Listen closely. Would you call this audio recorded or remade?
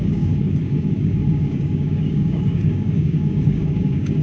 remade